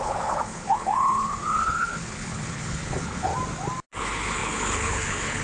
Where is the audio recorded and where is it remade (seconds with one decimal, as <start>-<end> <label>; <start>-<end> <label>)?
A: 0.0-3.3 remade; 3.3-3.9 recorded; 3.9-5.4 remade